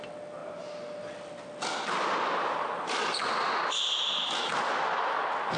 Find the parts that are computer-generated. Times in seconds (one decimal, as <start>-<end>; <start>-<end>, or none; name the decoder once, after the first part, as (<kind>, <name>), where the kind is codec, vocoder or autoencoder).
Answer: none